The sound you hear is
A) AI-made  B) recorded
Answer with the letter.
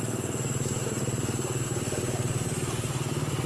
B